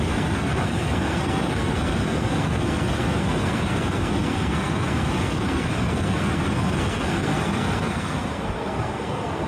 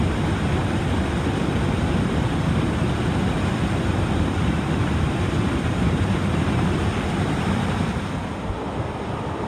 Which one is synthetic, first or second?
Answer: first